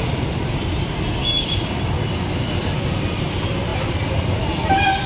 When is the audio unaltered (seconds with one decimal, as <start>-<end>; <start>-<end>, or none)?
0.0-1.2; 1.8-5.1